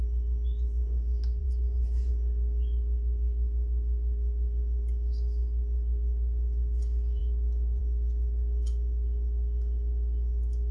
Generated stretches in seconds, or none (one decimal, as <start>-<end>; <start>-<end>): 1.4-2.1